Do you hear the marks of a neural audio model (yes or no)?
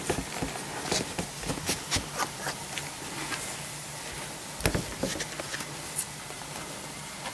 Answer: no